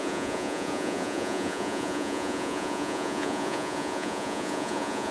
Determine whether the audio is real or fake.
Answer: fake